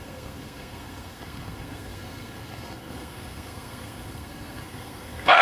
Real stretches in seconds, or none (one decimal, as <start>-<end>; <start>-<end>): none